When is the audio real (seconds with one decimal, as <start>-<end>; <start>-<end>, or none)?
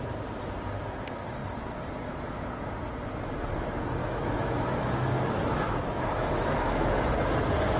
0.0-4.0; 6.9-7.8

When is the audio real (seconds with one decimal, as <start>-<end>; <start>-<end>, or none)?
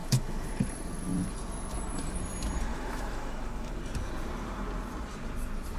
0.5-2.7; 3.7-5.8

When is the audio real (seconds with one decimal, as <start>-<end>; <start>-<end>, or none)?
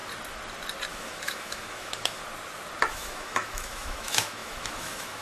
0.0-0.9; 2.2-2.9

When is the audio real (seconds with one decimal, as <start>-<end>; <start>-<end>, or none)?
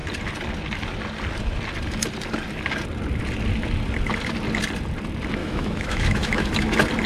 0.0-5.4; 6.5-7.1